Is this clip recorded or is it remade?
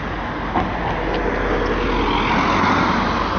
recorded